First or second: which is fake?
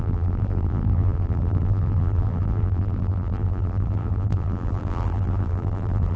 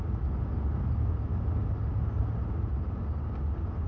first